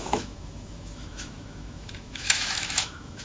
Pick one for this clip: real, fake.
fake